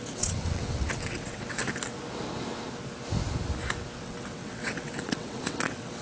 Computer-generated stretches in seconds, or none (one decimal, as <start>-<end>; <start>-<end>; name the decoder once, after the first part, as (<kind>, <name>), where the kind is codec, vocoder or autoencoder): 0.0-1.6 (vocoder, WaveNeXt); 4.0-6.0